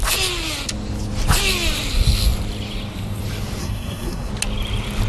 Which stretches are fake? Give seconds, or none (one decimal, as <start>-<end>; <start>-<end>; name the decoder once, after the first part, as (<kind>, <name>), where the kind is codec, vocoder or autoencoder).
3.6-4.3 (codec, SNAC)

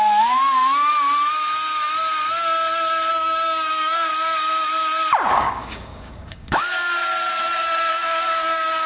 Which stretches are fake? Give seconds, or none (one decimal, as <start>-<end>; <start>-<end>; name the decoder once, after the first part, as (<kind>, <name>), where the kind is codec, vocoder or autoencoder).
0.0-0.9 (codec, DAC); 3.1-4.1; 5.3-7.0; 7.9-8.9

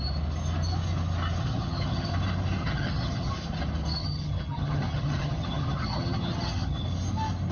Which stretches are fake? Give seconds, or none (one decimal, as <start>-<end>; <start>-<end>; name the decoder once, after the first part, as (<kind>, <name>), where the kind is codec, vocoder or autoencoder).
1.4-2.1 (vocoder, HiFi-GAN); 2.6-3.3; 4.0-6.8

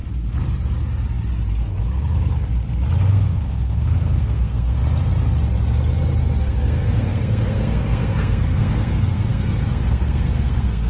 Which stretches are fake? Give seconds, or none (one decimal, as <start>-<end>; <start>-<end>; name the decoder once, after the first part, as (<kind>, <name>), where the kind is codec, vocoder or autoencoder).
3.1-4.8 (codec, SNAC); 6.4-10.9

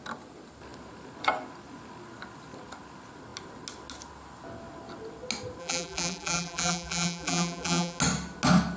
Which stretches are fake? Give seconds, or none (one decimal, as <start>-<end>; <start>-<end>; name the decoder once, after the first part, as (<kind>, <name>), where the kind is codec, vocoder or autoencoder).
5.6-8.0 (vocoder, BigVGAN v2)

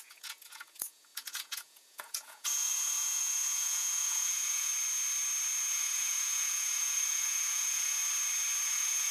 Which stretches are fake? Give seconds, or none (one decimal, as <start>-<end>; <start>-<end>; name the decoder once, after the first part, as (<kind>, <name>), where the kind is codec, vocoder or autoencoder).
0.0-4.7 (vocoder, Vocos); 5.7-8.0; 8.7-9.1

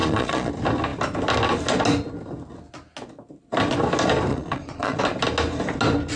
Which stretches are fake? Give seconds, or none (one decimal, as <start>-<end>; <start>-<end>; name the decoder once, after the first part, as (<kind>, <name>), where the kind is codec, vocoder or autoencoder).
0.0-0.5 (vocoder, Vocos); 4.3-5.0